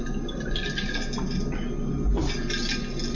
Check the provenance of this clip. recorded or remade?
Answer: recorded